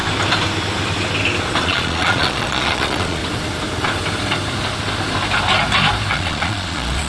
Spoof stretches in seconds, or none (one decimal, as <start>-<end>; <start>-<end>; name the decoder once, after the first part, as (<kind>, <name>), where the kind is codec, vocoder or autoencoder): 1.6-3.2 (vocoder, Vocos); 6.1-7.1